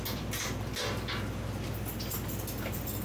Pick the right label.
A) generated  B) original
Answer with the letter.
B